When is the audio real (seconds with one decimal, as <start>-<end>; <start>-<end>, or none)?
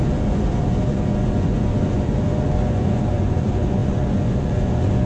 none